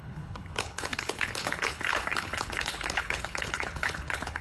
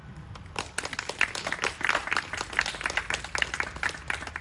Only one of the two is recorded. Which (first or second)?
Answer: second